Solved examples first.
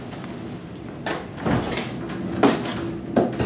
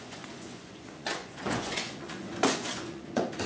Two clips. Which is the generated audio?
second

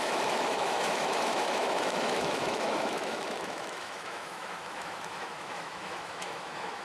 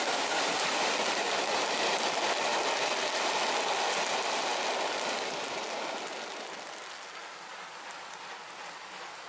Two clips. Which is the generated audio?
first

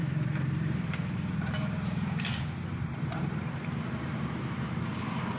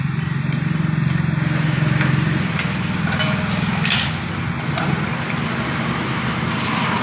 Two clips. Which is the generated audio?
first